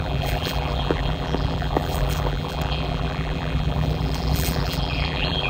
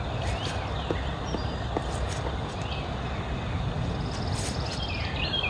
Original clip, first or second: second